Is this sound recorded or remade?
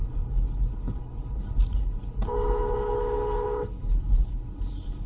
remade